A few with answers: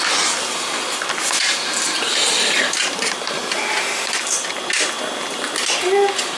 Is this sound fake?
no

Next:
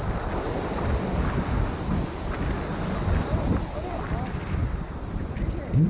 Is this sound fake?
no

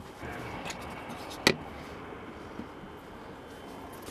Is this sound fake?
no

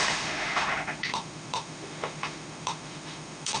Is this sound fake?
yes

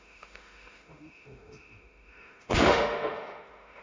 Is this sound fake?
yes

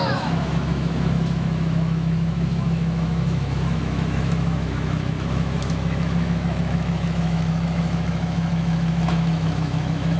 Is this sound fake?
yes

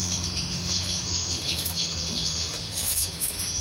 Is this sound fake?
yes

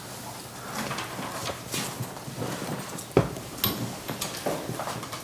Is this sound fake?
no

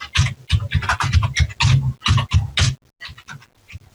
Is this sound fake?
no